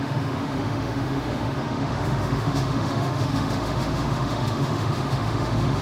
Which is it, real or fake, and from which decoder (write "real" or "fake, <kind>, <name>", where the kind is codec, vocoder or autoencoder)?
fake, autoencoder, DAC-VAE